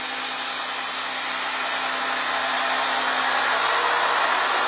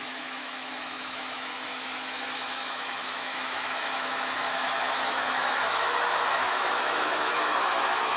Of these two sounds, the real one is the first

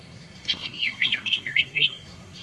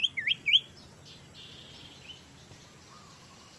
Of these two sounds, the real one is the second